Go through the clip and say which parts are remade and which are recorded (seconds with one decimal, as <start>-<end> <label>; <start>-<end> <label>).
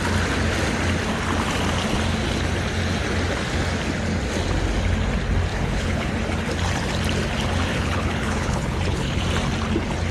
0.0-5.5 recorded; 5.5-6.1 remade; 6.1-7.7 recorded; 7.7-9.2 remade; 9.2-10.1 recorded